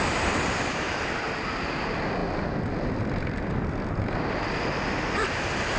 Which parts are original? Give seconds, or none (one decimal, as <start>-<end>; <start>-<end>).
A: 0.0-5.8